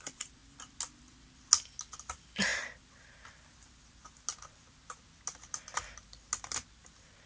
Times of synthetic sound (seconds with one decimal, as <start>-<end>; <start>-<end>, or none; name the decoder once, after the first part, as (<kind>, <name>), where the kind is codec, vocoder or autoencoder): none